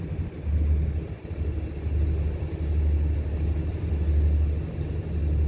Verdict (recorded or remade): recorded